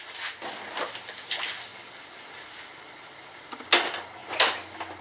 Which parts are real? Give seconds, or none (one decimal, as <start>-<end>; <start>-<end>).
0.0-5.0